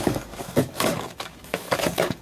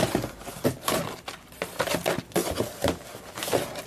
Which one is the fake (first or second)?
first